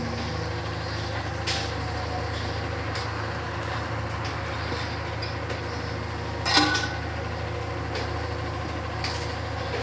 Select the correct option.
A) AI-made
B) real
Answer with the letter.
B